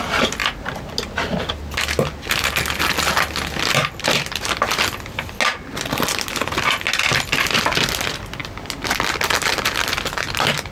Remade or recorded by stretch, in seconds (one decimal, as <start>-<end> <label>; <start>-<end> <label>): 0.0-10.7 recorded